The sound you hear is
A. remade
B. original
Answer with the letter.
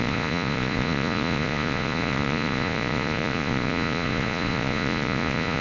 A